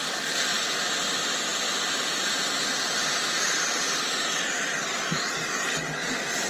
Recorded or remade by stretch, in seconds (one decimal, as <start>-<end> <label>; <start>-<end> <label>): 0.0-6.5 recorded